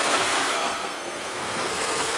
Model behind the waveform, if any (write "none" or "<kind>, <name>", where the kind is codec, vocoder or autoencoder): codec, SNAC